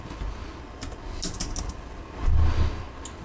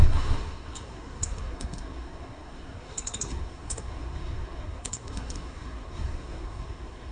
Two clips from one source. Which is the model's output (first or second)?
second